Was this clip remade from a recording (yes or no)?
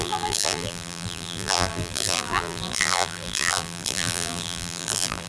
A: yes